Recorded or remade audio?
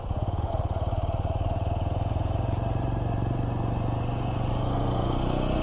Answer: remade